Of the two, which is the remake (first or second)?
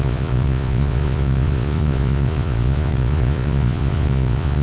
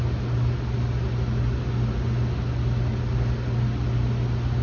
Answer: first